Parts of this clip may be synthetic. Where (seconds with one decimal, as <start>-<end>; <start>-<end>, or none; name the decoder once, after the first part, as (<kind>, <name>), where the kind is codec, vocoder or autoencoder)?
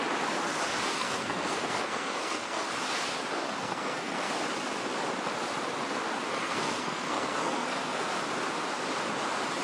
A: 0.9-2.7 (codec, SNAC); 3.6-4.3; 6.3-8.1